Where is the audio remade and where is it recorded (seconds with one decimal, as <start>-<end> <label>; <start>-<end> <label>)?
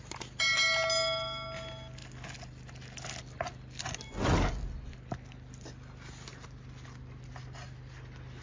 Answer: 0.0-8.4 recorded